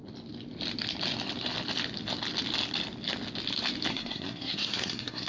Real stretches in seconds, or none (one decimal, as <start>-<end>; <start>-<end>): 0.0-3.9